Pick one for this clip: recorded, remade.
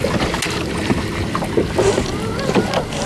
recorded